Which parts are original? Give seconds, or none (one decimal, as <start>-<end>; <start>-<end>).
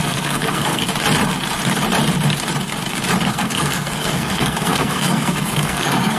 0.8-3.3